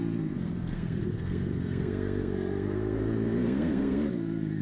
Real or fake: fake